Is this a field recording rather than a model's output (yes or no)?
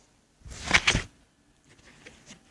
yes